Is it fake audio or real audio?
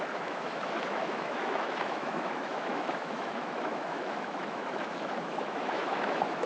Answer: fake